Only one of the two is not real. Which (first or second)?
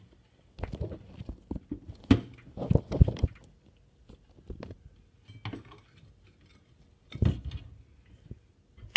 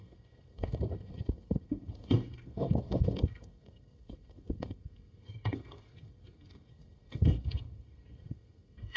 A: second